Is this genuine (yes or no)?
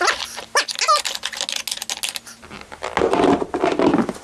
yes